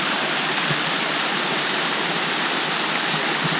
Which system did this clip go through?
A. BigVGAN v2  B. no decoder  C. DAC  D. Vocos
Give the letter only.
B